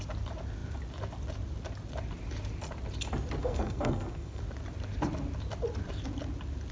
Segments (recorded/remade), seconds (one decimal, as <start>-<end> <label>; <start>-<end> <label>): 0.0-3.4 recorded; 3.4-4.4 remade; 4.4-6.7 recorded